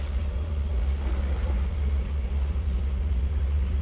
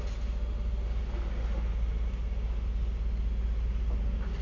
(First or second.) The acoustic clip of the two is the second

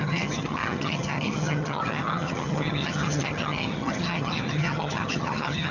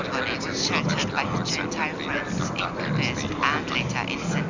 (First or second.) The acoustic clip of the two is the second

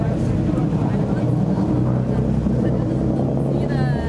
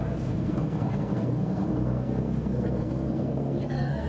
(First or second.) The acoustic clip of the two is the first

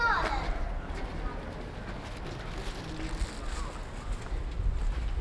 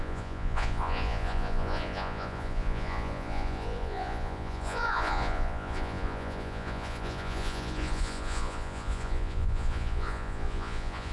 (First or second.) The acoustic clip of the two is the first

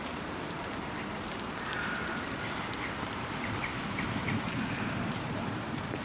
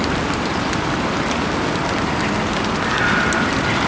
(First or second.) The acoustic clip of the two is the second